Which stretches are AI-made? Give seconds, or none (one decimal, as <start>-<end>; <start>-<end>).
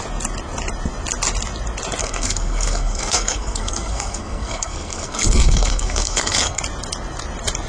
2.0-6.6